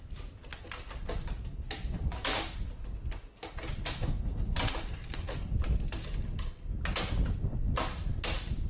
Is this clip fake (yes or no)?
no